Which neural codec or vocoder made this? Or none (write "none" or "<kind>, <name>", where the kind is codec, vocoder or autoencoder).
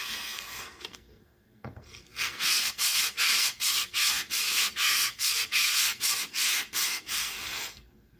codec, SNAC